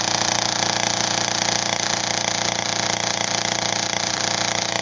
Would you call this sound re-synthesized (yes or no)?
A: no